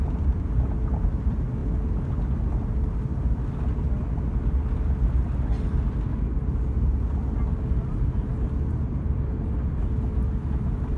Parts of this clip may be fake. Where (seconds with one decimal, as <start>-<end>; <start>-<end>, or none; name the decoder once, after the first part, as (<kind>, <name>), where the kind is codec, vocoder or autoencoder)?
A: none